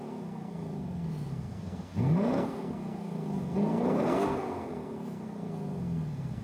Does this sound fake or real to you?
fake